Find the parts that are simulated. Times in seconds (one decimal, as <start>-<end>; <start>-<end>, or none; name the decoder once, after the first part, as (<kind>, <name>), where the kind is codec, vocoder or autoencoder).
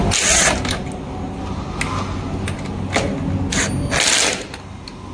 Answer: none